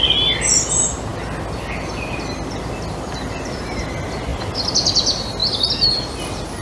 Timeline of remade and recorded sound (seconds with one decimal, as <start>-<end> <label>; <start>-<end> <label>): 0.0-6.6 recorded